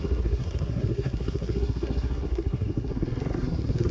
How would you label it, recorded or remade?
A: remade